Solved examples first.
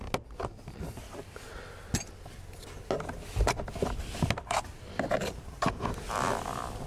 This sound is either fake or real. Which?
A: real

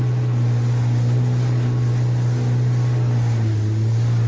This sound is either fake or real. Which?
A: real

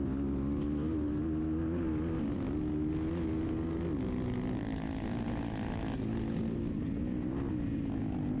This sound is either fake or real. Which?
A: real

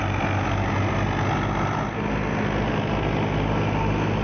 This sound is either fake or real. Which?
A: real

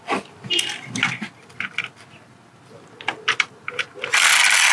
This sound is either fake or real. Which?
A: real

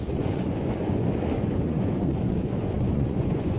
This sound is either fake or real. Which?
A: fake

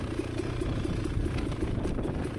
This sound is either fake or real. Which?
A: real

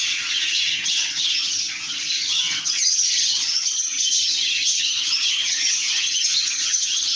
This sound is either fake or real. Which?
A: fake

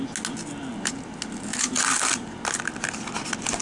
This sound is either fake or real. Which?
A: real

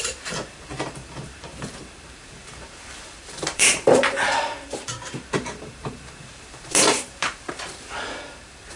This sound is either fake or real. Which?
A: fake